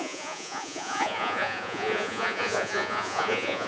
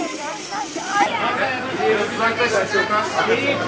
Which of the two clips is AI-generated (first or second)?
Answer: first